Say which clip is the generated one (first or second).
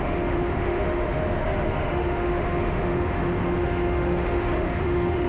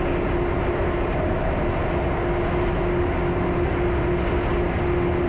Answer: first